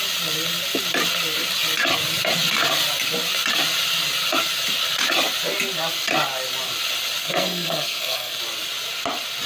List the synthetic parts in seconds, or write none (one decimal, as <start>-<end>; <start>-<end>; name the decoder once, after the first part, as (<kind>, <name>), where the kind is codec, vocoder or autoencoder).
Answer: 7.2-8.4 (codec, SNAC)

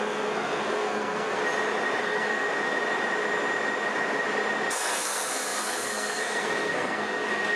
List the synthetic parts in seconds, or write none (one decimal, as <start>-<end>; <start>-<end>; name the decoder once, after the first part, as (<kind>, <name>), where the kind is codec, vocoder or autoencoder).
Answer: 0.0-1.4 (codec, SNAC); 2.0-2.5; 4.7-7.6

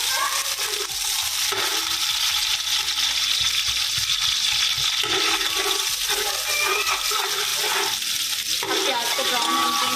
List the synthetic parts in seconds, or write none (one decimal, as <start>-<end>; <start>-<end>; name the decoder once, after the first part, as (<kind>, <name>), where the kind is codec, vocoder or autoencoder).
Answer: none